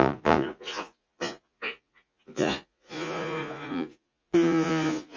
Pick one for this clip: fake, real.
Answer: fake